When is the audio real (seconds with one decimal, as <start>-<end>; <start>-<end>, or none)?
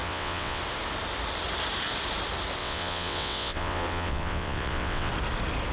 0.6-2.6; 5.1-5.7